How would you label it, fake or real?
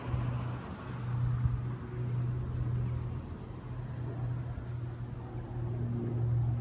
real